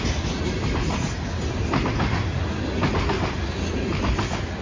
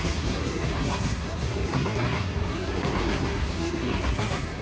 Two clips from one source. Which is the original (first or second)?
first